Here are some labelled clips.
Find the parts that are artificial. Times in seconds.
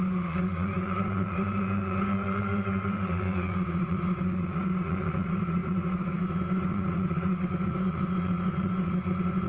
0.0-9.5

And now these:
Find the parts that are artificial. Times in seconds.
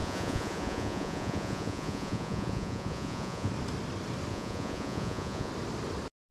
0.0-3.5; 4.3-5.5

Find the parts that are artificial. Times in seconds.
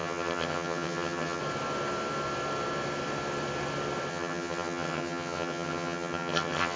0.0-1.4; 4.1-6.8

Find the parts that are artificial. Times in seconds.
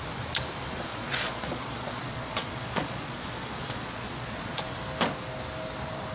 0.9-4.6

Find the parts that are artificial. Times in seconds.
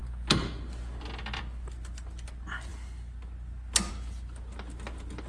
none